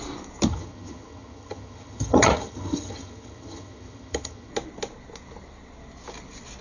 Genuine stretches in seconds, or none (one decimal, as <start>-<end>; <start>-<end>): 0.0-0.5; 4.5-6.6